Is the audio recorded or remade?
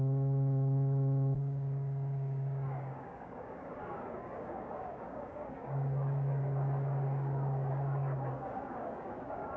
remade